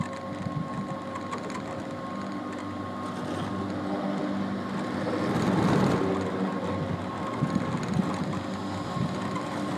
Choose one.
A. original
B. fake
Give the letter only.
A